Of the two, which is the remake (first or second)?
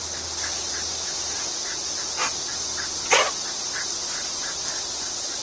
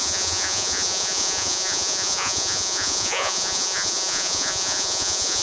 second